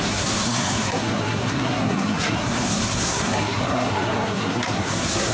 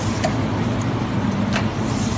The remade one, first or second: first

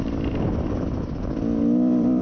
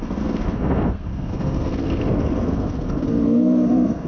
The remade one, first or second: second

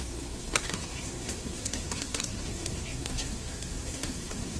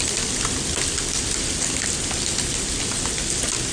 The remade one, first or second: first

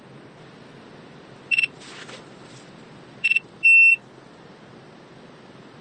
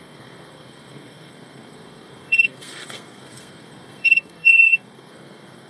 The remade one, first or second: second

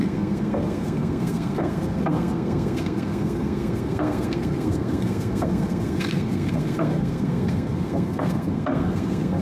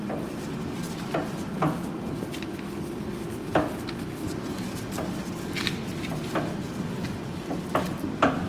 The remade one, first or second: first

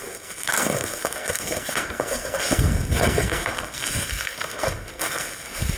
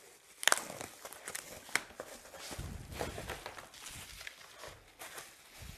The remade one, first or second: first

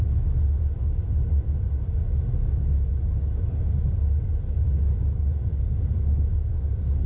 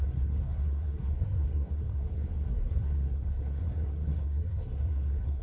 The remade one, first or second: second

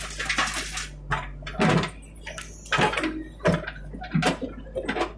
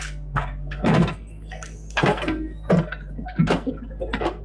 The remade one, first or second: second